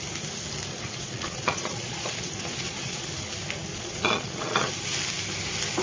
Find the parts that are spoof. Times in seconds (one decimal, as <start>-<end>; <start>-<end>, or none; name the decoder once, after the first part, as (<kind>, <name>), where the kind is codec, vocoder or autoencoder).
0.7-3.1 (vocoder, Vocos); 3.7-4.7